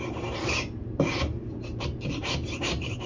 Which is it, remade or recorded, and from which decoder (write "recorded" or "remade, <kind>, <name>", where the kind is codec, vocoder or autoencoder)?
remade, vocoder, BigVGAN v2